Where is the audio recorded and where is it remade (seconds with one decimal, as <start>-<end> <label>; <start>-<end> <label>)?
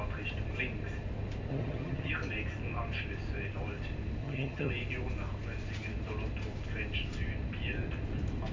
0.0-1.5 recorded; 1.5-2.1 remade; 2.1-4.2 recorded; 4.2-4.7 remade; 4.7-8.5 recorded